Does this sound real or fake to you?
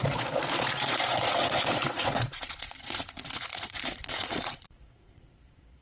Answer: fake